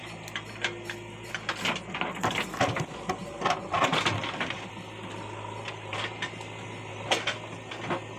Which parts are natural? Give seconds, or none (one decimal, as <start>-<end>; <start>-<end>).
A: 0.0-8.2